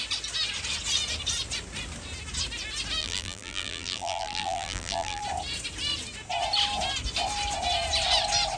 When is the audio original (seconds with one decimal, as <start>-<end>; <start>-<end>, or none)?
0.0-3.0; 5.2-8.6